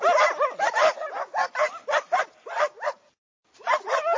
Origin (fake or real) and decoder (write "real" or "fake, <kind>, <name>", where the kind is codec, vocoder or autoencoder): real